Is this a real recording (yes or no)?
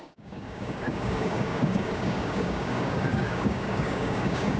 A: no